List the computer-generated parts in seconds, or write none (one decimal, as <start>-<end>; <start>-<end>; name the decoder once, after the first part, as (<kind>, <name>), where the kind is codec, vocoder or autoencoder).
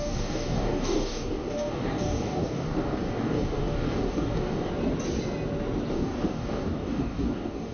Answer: 0.0-4.7 (codec, DAC); 5.9-7.7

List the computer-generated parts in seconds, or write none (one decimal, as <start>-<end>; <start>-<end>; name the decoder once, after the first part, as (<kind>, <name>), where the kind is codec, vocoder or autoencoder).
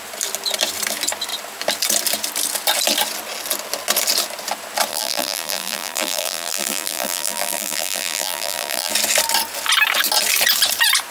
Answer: 4.9-8.9 (vocoder, BigVGAN v2)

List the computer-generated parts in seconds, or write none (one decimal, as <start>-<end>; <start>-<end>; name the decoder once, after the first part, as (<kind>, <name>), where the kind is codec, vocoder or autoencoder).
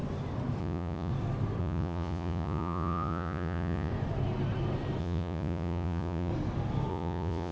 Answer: 0.6-1.1 (vocoder, Vocos); 1.6-3.9; 5.0-6.3; 6.9-7.5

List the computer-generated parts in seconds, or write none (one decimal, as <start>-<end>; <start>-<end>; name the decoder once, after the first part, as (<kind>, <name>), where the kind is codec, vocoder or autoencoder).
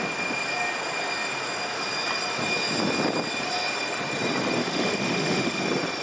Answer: 4.6-5.6 (autoencoder, DAC-VAE)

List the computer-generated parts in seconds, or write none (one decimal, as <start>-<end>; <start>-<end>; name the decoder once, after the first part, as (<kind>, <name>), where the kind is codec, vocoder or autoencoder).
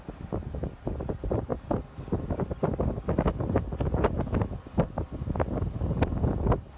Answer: none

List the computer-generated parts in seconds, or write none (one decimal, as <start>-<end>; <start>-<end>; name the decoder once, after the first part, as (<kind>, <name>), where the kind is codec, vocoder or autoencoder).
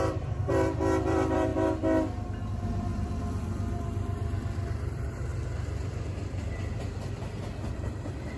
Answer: 0.0-1.5 (vocoder, BigVGAN v2); 2.5-5.3; 7.7-8.4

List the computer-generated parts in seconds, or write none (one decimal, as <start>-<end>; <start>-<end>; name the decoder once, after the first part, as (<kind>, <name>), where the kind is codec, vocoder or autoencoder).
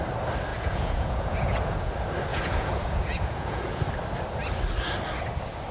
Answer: 0.5-1.9 (vocoder, Vocos); 2.3-3.8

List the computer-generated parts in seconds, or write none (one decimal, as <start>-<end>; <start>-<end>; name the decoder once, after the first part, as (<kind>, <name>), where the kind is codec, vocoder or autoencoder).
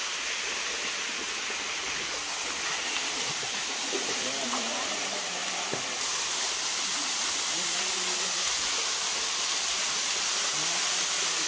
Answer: none